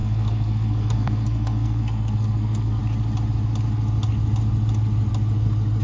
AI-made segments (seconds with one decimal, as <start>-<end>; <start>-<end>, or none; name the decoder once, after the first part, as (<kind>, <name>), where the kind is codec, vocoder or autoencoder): 0.0-2.8 (codec, SNAC)